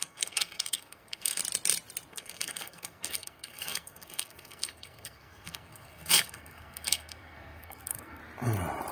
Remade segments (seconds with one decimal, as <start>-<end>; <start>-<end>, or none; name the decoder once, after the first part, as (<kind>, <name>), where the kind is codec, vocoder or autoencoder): 0.0-1.4 (codec, SNAC); 2.1-8.2